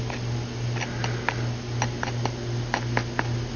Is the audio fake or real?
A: real